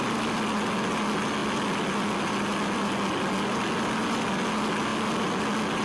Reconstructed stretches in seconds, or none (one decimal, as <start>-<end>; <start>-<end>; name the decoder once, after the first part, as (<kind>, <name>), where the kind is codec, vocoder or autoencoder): none